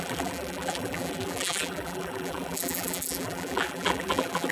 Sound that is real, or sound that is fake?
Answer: fake